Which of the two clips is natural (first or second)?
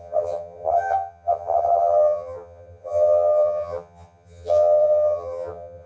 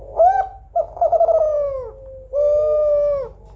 second